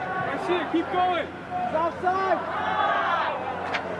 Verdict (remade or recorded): recorded